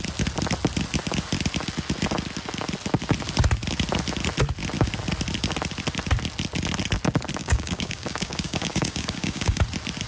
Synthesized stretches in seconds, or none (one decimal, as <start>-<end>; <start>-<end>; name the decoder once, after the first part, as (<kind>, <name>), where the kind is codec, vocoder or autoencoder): 7.4-9.6 (codec, DAC)